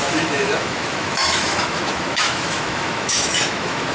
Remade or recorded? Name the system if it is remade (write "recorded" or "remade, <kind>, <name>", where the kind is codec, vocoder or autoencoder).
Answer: remade, autoencoder, DAC-VAE